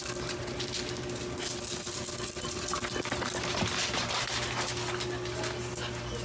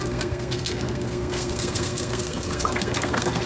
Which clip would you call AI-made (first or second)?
second